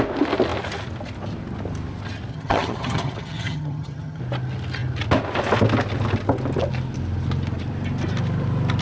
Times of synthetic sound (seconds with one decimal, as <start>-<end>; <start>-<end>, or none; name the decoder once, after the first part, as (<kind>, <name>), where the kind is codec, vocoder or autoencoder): 2.3-4.2 (vocoder, HiFi-GAN)